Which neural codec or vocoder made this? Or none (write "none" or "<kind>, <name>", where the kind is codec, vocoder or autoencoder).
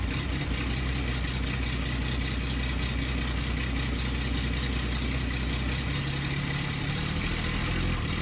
none